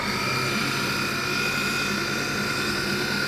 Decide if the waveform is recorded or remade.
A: recorded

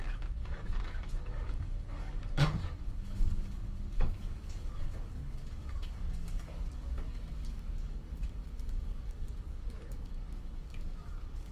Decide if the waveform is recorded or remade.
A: remade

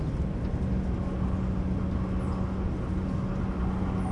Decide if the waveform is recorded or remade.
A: recorded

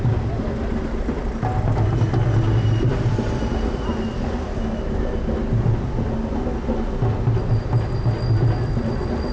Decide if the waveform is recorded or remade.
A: recorded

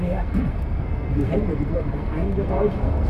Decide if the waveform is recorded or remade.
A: remade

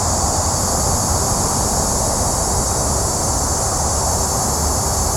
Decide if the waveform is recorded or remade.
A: recorded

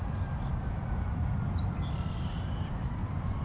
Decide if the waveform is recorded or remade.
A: recorded